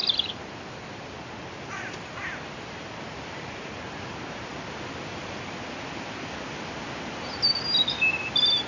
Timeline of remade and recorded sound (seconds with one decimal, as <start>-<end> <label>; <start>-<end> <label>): 0.0-8.7 recorded